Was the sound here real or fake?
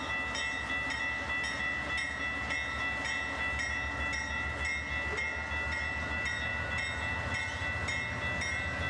real